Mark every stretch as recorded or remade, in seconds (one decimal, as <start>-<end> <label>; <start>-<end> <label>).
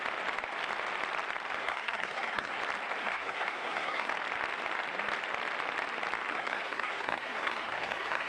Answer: 0.0-1.6 recorded; 1.6-2.6 remade; 2.6-3.0 recorded; 3.0-4.1 remade; 4.1-6.3 recorded; 6.3-8.3 remade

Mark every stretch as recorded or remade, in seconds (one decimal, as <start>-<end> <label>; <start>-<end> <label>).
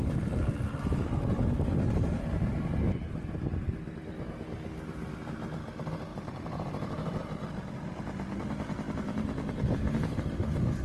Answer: 0.0-6.1 recorded; 6.1-7.2 remade; 7.2-10.8 recorded